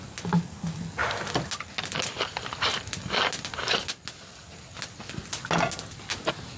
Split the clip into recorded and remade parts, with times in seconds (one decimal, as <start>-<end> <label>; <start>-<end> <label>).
0.0-6.6 recorded